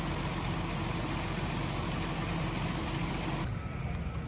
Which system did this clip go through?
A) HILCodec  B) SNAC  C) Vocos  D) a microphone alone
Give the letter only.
D